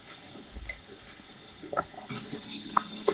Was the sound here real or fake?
fake